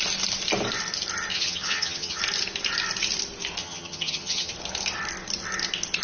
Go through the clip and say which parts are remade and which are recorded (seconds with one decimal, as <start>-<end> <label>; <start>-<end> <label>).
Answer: 0.0-1.3 recorded; 1.3-2.2 remade; 2.2-3.6 recorded; 3.6-4.5 remade; 4.5-6.0 recorded